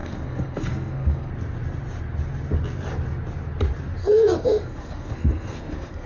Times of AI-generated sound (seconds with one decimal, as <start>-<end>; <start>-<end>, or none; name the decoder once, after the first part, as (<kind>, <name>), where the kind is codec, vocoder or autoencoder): 0.0-1.3 (codec, SNAC); 4.0-6.1